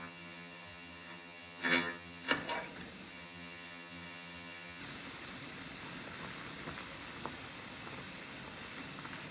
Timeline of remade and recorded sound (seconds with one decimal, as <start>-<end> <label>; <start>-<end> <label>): 0.0-2.3 remade; 2.3-3.1 recorded; 3.1-4.8 remade; 4.8-9.3 recorded